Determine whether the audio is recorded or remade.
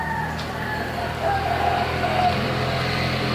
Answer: recorded